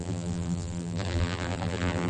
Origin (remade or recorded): remade